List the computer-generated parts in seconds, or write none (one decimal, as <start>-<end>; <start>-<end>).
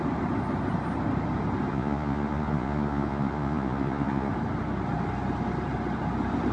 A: 1.7-4.3